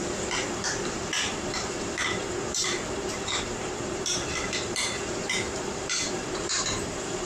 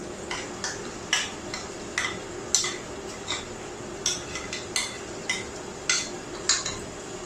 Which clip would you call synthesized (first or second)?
first